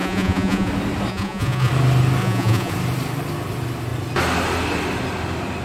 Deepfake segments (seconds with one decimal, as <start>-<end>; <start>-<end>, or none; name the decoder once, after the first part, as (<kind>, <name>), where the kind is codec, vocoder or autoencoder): 0.0-0.7 (vocoder, Vocos); 1.1-1.7; 2.2-2.7